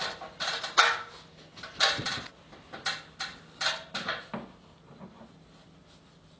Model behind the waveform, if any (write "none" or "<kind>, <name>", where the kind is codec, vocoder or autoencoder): none